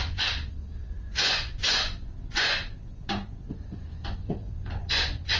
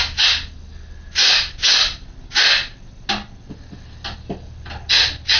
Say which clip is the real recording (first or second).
second